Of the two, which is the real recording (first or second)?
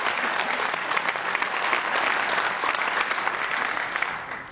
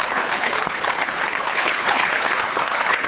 first